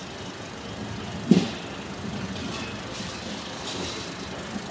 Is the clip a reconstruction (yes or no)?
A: no